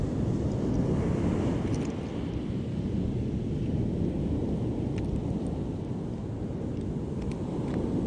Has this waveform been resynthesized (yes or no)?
no